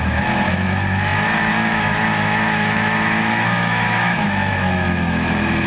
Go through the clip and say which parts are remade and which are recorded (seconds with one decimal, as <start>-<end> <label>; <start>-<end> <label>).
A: 0.0-5.7 remade